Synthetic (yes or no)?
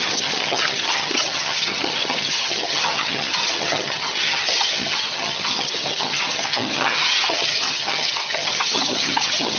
yes